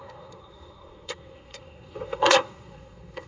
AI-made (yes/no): yes